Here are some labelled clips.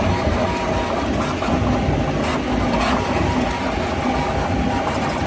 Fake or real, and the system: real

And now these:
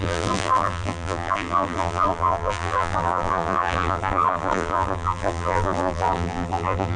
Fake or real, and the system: fake, vocoder, BigVGAN v2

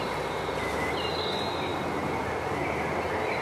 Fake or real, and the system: fake, vocoder, BigVGAN v2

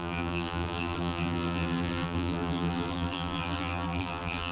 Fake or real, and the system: fake, vocoder, BigVGAN v2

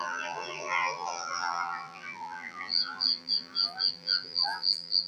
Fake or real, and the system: fake, vocoder, BigVGAN v2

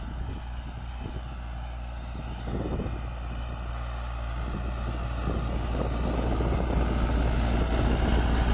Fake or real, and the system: real